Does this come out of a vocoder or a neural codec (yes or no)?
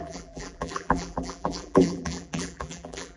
yes